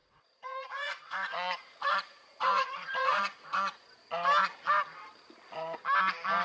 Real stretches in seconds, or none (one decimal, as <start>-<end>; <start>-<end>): 3.8-6.4